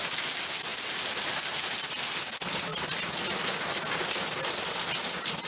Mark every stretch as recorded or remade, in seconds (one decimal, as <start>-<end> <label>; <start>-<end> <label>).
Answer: 0.0-0.7 recorded; 0.7-1.3 remade; 1.3-5.5 recorded